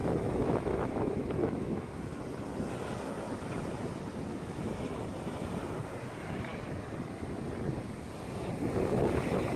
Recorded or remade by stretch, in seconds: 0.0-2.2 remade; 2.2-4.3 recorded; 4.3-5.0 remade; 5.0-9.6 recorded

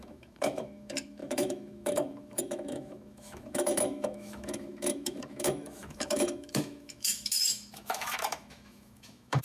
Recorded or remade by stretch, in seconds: 0.0-9.4 remade